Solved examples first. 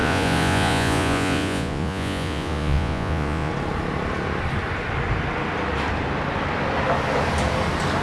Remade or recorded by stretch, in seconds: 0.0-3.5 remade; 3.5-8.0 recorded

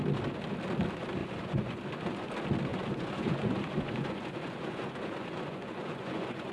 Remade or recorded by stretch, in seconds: 0.0-1.2 recorded; 1.2-2.3 remade; 2.3-2.7 recorded; 2.7-6.5 remade

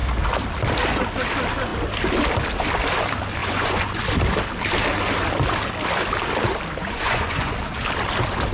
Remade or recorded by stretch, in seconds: 0.0-3.4 recorded; 3.4-4.0 remade; 4.0-6.8 recorded; 6.8-7.5 remade; 7.5-8.5 recorded

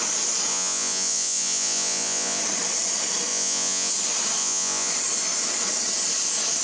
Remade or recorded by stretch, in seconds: 0.0-0.5 recorded; 0.5-2.4 remade; 2.4-3.3 recorded; 3.3-3.9 remade; 3.9-4.4 recorded; 4.4-4.9 remade; 4.9-6.6 recorded